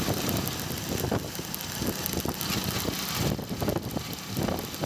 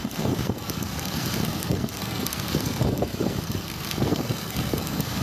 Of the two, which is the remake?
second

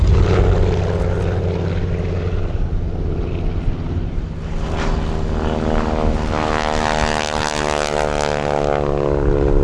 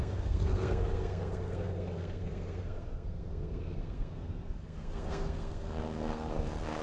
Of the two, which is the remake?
second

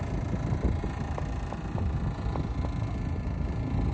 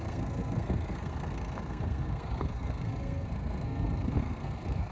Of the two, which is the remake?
second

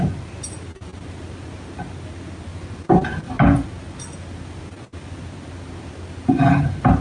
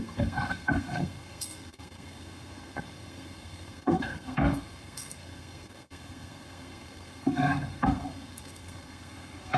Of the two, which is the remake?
second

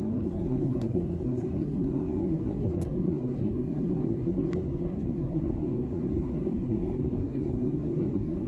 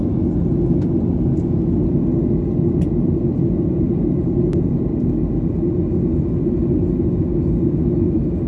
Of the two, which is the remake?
first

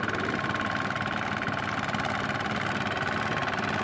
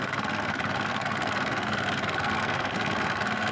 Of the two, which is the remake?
second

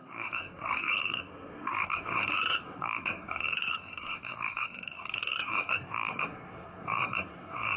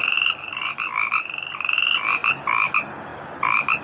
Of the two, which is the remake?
first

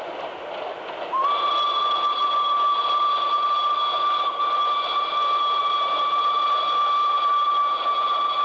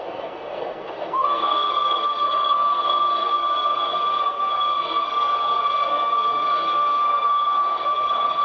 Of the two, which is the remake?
second